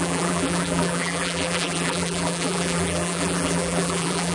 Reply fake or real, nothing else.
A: fake